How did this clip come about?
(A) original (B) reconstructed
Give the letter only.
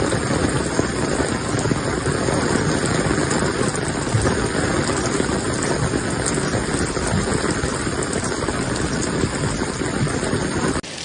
A